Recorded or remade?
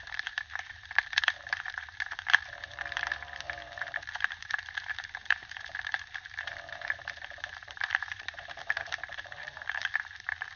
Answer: remade